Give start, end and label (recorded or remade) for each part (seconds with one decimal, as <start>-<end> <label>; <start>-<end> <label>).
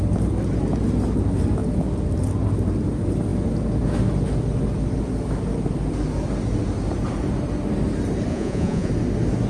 0.0-8.3 recorded; 8.3-8.9 remade; 8.9-9.5 recorded